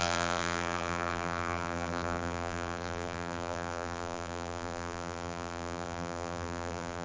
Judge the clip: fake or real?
fake